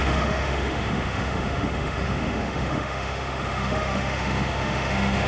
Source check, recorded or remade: remade